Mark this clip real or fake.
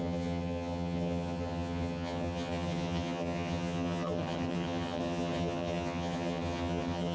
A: fake